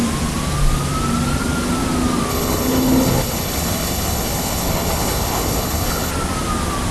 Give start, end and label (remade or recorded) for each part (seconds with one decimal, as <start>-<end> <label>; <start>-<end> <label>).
0.0-2.3 recorded; 2.3-6.1 remade; 6.1-6.9 recorded